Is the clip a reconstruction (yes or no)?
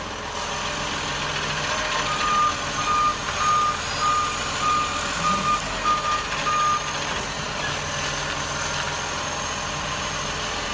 no